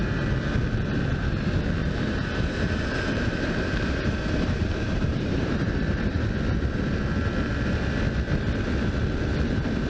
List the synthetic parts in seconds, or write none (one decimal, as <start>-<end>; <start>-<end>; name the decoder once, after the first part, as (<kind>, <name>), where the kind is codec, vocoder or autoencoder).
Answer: 1.8-6.2 (vocoder, BigVGAN v2)